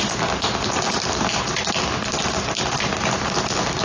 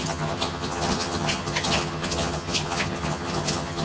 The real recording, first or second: first